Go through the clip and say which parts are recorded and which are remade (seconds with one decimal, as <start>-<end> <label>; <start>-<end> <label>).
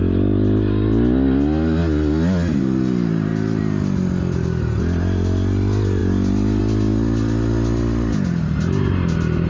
0.0-9.5 recorded